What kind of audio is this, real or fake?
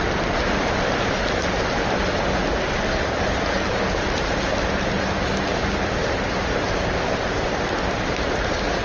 real